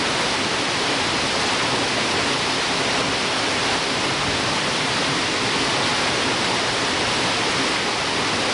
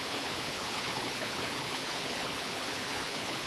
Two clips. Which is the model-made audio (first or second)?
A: second